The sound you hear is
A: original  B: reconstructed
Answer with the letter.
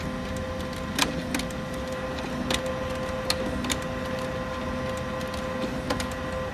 A